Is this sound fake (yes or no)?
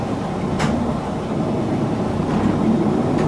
no